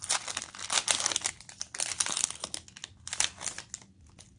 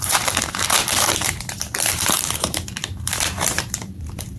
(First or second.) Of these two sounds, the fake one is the second